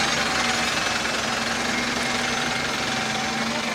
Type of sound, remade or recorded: recorded